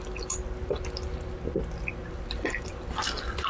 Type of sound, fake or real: real